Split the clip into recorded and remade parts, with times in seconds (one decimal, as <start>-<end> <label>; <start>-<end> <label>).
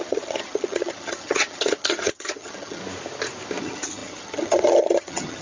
0.0-2.8 remade; 2.8-3.6 recorded; 3.6-5.4 remade